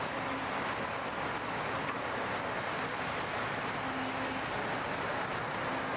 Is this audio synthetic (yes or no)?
no